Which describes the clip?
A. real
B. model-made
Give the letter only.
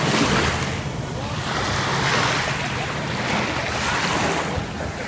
A